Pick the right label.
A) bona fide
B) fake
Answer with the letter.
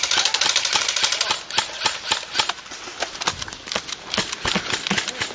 A